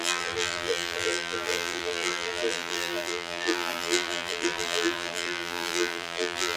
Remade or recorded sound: remade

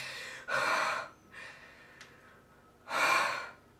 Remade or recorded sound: recorded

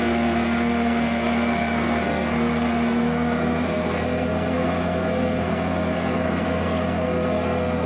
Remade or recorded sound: remade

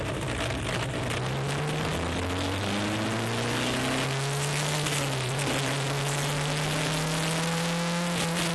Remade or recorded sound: recorded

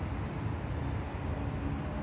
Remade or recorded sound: recorded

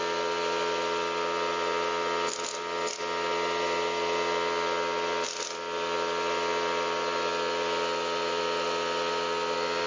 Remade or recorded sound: recorded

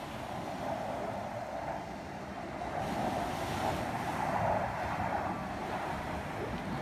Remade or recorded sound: recorded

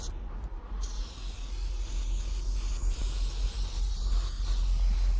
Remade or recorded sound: recorded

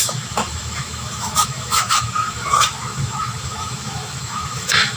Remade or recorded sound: remade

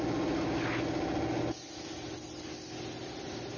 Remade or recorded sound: recorded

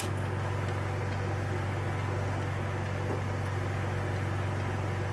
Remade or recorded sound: recorded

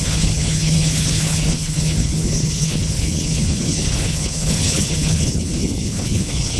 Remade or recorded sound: remade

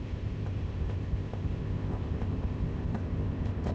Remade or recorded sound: remade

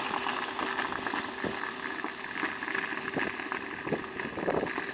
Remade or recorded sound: recorded